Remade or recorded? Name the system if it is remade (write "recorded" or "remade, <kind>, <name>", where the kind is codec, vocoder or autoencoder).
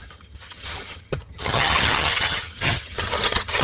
remade, vocoder, HiFi-GAN